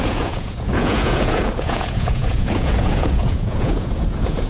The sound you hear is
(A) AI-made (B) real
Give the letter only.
A